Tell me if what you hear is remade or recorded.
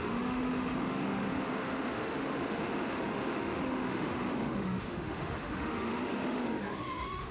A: remade